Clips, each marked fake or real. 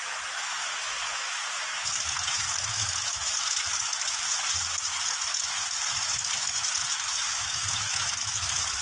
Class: fake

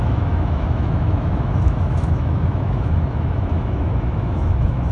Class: fake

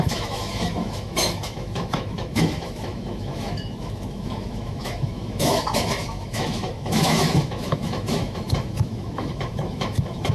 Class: fake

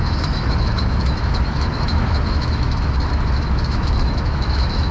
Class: fake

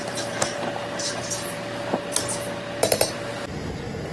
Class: real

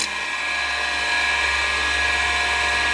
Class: real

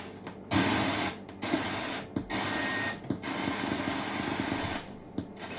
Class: real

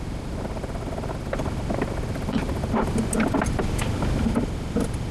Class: real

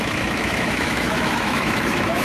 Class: fake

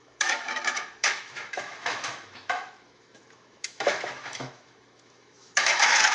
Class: fake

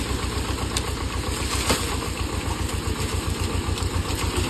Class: real